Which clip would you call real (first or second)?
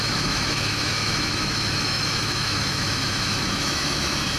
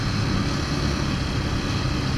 second